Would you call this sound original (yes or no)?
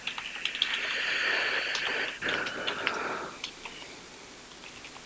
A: yes